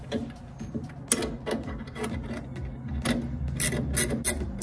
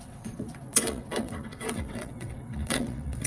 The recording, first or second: first